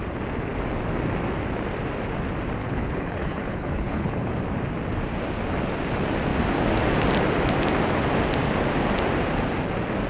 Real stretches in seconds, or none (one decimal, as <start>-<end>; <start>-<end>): 0.0-2.6; 4.3-10.1